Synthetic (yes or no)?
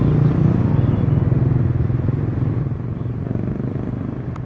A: no